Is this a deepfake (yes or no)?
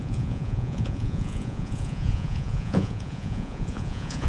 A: yes